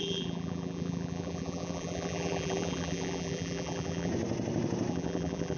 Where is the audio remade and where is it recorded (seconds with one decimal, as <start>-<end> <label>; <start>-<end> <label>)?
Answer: 0.0-4.1 remade; 4.1-4.9 recorded; 4.9-5.6 remade